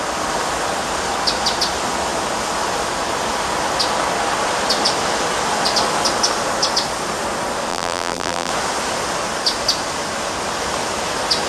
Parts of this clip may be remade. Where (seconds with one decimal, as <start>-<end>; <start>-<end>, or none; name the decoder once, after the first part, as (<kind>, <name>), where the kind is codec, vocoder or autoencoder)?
7.7-8.5 (vocoder, BigVGAN v2)